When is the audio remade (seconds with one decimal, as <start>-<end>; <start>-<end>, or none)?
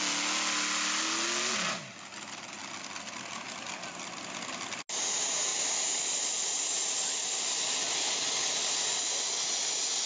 5.5-6.4